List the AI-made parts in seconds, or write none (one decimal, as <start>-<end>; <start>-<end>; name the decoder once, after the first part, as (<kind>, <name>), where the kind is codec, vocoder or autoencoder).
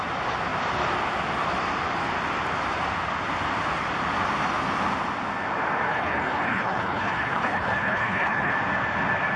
5.9-8.5 (codec, HILCodec)